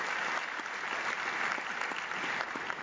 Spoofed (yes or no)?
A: no